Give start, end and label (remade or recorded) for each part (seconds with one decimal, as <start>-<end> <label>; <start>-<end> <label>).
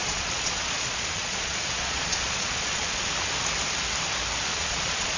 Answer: 0.0-3.1 remade; 3.1-4.5 recorded; 4.5-5.2 remade